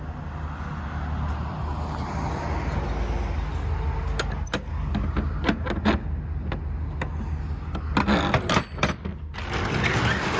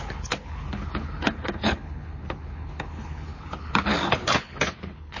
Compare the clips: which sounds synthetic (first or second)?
second